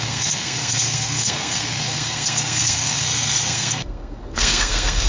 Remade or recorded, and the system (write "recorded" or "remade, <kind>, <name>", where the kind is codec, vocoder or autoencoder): remade, codec, SNAC